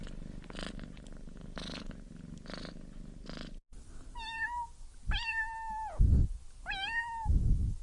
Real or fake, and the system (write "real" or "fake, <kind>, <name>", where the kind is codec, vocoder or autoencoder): real